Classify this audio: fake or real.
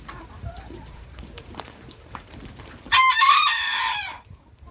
fake